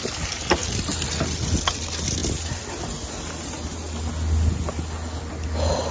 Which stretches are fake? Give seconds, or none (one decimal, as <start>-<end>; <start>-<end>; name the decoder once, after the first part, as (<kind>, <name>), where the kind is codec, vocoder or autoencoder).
none